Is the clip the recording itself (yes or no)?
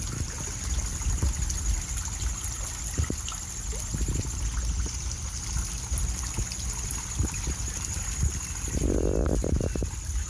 yes